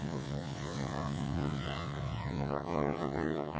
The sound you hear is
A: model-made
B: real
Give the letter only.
A